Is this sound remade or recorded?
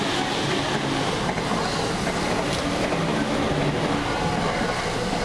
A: recorded